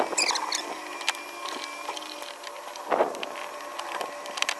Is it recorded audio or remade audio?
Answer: recorded